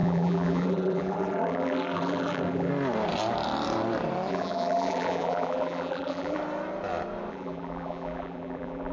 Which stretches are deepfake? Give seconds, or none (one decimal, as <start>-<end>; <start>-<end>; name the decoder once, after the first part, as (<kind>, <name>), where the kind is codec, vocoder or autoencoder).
0.0-2.7 (vocoder, BigVGAN v2); 4.3-6.4; 7.3-8.9